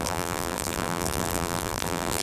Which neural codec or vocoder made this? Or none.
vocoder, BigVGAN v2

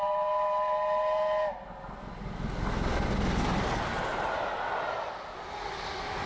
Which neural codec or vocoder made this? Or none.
none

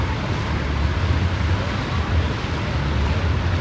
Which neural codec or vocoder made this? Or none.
none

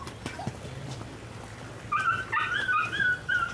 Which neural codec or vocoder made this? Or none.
vocoder, BigVGAN v2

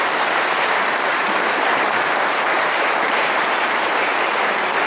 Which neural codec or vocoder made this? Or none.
vocoder, BigVGAN v2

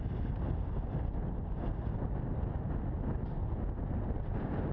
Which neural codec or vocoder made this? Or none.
none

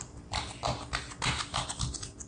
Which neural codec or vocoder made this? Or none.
none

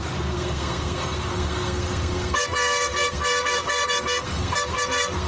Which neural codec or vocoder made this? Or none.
codec, SNAC